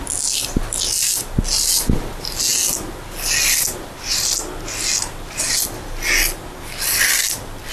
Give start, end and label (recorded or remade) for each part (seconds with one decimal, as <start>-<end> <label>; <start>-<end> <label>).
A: 0.0-7.7 recorded